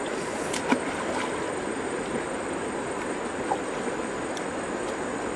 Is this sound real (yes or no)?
yes